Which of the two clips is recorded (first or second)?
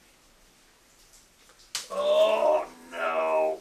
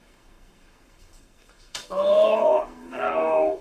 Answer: first